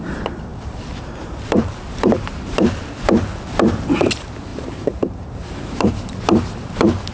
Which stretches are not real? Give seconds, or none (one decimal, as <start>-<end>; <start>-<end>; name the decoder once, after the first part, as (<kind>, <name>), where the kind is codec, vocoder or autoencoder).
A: 0.5-2.8 (vocoder, BigVGAN v2); 4.5-5.9